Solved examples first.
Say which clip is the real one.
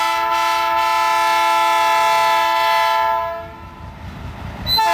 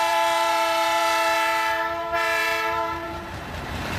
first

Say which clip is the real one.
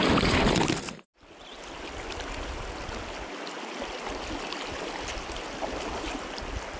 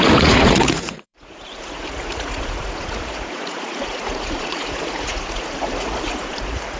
first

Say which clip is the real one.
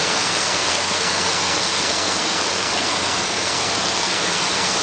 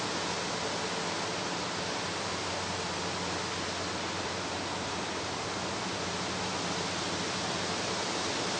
second